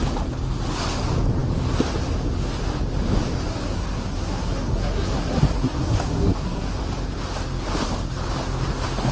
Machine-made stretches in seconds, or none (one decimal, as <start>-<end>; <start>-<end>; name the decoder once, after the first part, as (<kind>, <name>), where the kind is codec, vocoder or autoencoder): 3.5-6.8 (codec, SNAC)